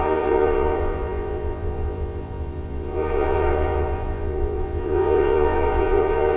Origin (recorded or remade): remade